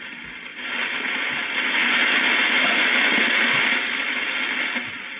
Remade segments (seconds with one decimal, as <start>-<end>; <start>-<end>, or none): 0.5-3.6